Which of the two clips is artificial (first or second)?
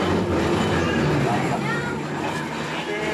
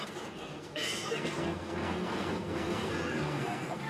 second